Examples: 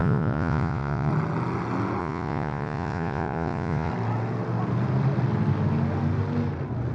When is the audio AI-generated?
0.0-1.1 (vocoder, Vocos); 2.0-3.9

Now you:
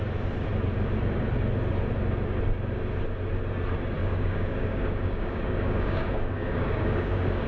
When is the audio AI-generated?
4.0-7.5 (codec, DAC)

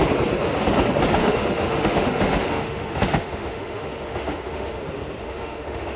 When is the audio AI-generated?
1.2-4.8 (autoencoder, DAC-VAE); 5.2-6.0